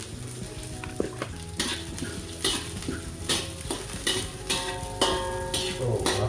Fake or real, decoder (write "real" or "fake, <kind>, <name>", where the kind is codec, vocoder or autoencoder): real